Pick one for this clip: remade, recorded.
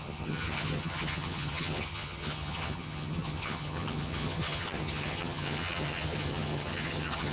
remade